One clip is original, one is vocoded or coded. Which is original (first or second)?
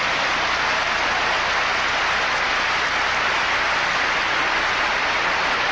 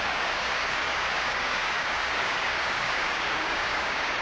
first